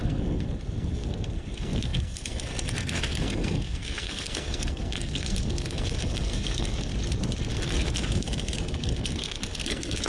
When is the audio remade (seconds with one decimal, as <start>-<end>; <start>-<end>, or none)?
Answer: 0.0-6.9; 7.5-10.1